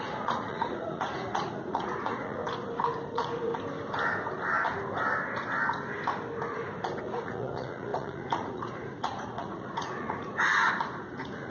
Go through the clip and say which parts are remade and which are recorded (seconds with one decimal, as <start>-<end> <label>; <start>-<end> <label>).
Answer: 0.0-2.4 remade; 2.4-3.1 recorded; 3.1-3.5 remade; 3.5-7.0 recorded; 7.0-11.5 remade